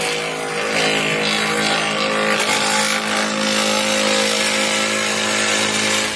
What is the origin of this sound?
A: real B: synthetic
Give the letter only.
A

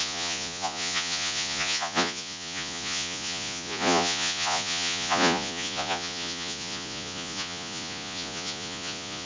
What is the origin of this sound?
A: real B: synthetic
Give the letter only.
B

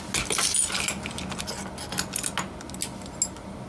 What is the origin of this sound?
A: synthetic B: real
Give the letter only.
B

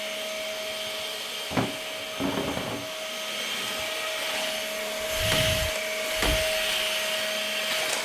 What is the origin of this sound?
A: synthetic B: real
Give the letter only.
B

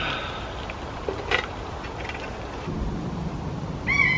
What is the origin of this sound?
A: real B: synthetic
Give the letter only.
A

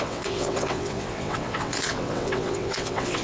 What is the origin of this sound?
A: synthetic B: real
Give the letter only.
A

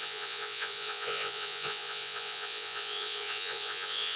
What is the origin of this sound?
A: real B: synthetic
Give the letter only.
B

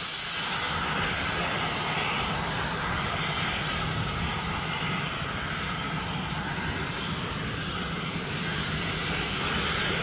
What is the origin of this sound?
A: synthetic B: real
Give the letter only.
B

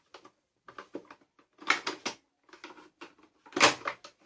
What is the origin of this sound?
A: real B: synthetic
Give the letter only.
A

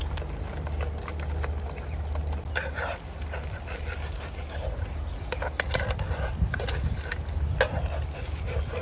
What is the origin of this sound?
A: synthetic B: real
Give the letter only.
B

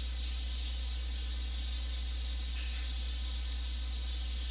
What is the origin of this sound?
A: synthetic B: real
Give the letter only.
B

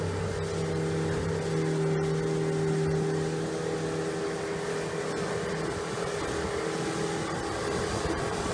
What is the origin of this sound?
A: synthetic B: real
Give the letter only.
B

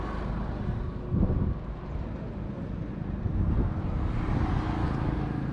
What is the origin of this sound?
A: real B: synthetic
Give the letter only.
A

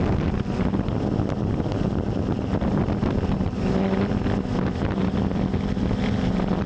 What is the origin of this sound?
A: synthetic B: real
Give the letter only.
B